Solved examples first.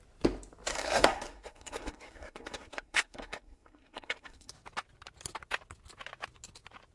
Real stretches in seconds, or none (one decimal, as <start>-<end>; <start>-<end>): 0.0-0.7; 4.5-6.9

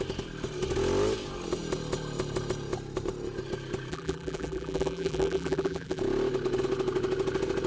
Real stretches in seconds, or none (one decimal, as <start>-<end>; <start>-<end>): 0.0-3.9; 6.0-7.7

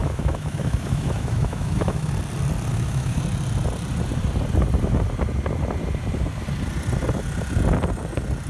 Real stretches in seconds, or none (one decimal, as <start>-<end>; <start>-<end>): 2.1-2.7; 3.2-8.5